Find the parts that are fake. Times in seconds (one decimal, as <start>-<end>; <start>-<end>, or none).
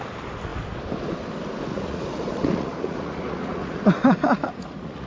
1.7-5.1